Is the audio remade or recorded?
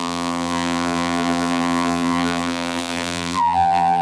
remade